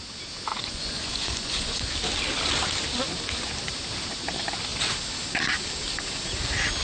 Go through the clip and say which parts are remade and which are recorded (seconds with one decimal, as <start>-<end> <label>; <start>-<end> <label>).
0.0-0.5 recorded; 0.5-1.9 remade; 1.9-6.8 recorded